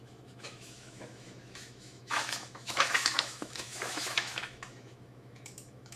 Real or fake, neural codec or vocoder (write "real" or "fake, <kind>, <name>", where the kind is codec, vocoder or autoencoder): fake, autoencoder, DAC-VAE